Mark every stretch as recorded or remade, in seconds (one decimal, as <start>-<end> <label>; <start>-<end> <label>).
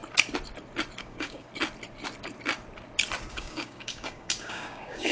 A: 0.0-1.0 recorded; 1.0-1.5 remade; 1.5-3.3 recorded; 3.3-5.1 remade